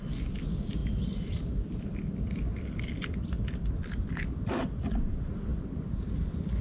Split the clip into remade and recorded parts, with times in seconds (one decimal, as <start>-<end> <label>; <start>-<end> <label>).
0.0-6.6 recorded

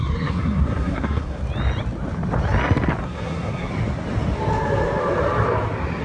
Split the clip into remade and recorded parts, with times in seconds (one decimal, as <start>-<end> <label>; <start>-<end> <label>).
0.0-1.4 remade; 1.4-3.0 recorded; 3.0-3.7 remade; 3.7-6.0 recorded

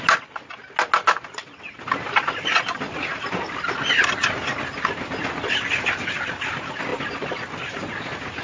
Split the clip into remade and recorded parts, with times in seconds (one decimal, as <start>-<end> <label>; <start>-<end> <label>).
0.0-8.4 recorded

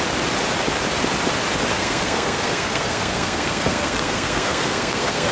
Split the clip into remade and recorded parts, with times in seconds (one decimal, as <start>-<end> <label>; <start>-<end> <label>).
0.0-1.7 recorded; 1.7-5.3 remade

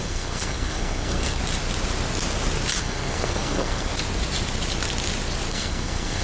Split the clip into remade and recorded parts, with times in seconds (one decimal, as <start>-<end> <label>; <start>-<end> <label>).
0.0-1.4 remade; 1.4-2.8 recorded; 2.8-3.9 remade; 3.9-5.5 recorded; 5.5-6.2 remade